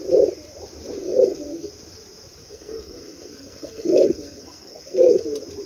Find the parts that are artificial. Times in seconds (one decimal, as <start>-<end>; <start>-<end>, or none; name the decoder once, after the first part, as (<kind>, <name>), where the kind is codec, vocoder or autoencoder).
1.0-1.7 (codec, SNAC); 2.4-5.2